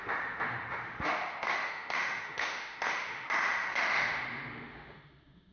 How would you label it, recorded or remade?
remade